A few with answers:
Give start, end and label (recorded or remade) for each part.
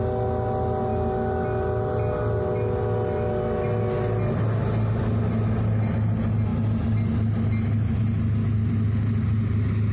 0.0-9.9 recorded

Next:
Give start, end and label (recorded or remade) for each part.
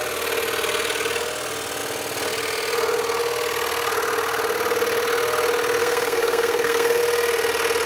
0.0-5.8 recorded; 5.8-7.0 remade; 7.0-7.9 recorded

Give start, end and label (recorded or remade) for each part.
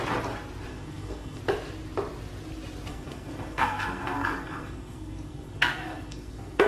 0.0-0.7 recorded; 0.7-1.4 remade; 1.4-2.9 recorded; 2.9-6.7 remade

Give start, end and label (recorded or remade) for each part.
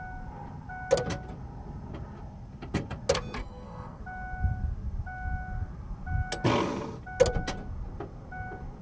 0.0-3.4 recorded; 3.4-4.0 remade; 4.0-8.8 recorded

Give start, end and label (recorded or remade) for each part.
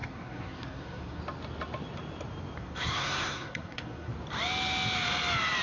0.0-1.2 remade; 1.2-2.6 recorded; 2.6-4.1 remade; 4.1-5.6 recorded